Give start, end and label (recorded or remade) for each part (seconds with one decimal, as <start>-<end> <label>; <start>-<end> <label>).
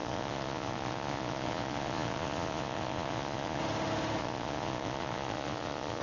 0.0-3.6 remade; 3.6-4.2 recorded; 4.2-6.0 remade